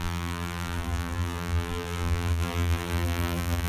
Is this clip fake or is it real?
fake